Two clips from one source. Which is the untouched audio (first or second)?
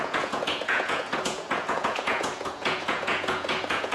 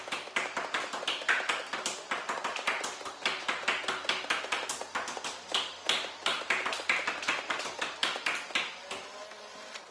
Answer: second